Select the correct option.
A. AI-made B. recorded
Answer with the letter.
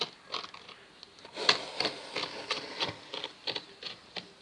B